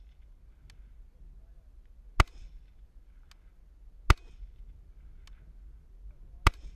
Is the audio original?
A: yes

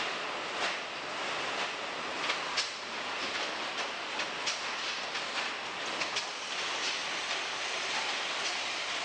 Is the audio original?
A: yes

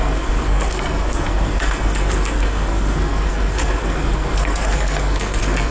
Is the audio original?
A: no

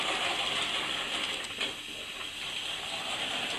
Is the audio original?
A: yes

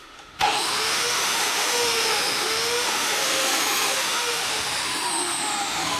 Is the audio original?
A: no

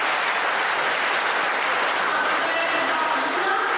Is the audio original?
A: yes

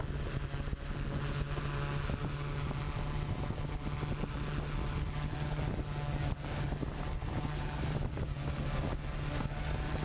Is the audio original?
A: yes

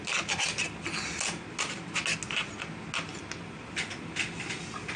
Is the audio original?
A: yes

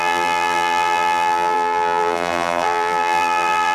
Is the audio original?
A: no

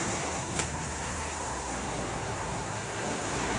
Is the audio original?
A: no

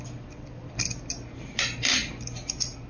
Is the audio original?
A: no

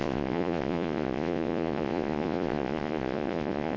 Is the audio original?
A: no